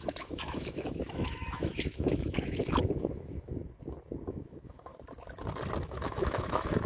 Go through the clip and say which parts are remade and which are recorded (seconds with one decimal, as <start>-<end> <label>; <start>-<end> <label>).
0.0-3.5 remade; 3.5-4.3 recorded; 4.3-4.9 remade; 4.9-5.8 recorded; 5.8-6.9 remade